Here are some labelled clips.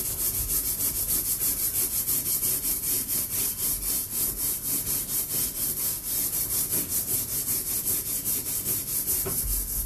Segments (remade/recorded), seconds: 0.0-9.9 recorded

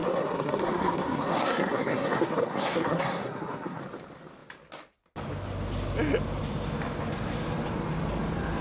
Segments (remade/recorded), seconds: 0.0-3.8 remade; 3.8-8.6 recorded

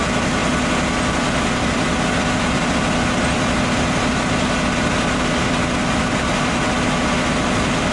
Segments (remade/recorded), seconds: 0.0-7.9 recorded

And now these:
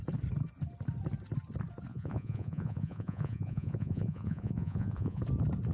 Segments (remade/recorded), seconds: 0.0-1.9 recorded; 1.9-5.2 remade; 5.2-5.7 recorded

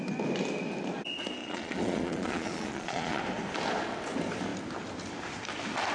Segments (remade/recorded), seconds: 0.0-1.4 recorded; 1.4-3.2 remade; 3.2-5.9 recorded